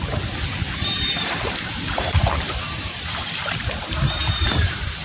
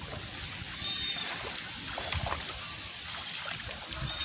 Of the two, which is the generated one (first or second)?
first